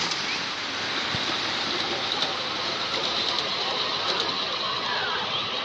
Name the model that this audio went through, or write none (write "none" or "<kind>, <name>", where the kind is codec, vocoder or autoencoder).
none